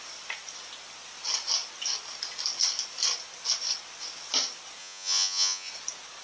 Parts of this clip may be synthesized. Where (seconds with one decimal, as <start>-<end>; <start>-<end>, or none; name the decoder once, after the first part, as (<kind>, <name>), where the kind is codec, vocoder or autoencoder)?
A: 4.8-5.7 (vocoder, Vocos)